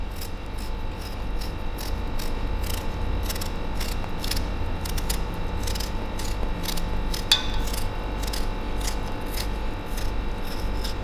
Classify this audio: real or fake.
real